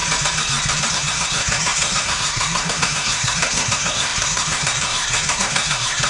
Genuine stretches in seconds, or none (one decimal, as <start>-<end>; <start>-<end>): 0.0-0.9